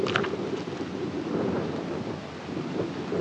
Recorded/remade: recorded